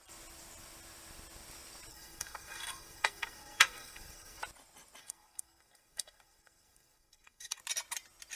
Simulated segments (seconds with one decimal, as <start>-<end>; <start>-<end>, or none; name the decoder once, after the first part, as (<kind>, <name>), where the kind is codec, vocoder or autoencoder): 1.9-4.4 (codec, SNAC); 5.0-7.6